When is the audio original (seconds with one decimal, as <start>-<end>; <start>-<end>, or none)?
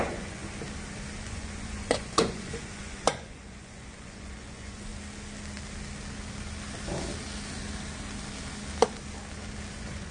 0.4-1.2; 4.9-9.7